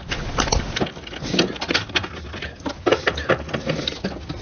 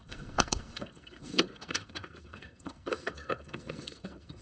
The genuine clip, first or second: first